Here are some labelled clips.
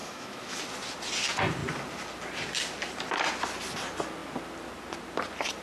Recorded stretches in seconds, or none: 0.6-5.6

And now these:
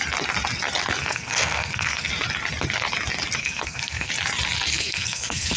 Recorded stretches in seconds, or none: 0.0-1.0; 2.1-3.4; 4.1-4.7

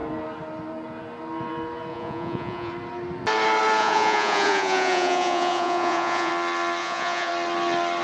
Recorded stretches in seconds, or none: 0.0-1.9; 2.7-3.8; 6.3-6.8; 7.3-8.0